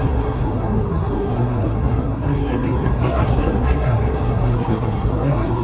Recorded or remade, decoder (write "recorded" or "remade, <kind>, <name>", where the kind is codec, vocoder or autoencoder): remade, codec, SNAC